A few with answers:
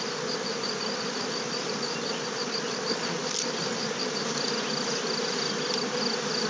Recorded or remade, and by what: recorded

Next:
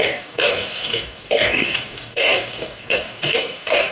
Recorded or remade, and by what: remade, codec, DAC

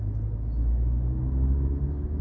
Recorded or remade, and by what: recorded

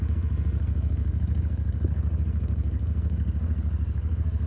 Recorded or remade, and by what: remade, codec, SNAC